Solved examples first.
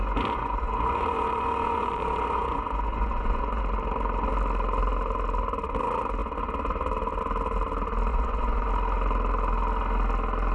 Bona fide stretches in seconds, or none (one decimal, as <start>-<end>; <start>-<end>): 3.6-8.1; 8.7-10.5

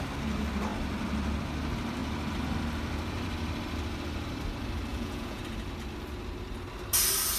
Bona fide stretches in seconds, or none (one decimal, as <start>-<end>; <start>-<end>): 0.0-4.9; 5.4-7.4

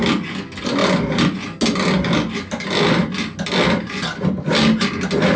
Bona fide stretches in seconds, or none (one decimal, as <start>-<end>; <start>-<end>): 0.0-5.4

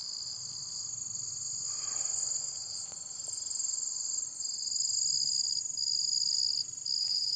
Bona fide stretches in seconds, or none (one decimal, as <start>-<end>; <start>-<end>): 0.0-2.4; 3.2-7.0

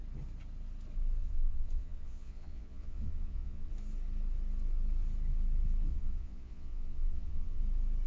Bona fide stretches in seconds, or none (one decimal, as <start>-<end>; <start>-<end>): 0.0-1.2; 3.7-5.9; 7.6-8.1

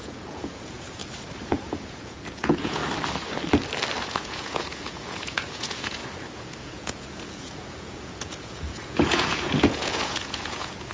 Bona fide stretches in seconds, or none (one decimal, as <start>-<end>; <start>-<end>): 1.0-1.5; 2.8-4.0